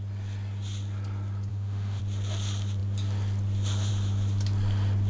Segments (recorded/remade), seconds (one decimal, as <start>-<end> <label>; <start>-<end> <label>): 0.0-1.5 recorded; 1.5-2.0 remade; 2.0-5.1 recorded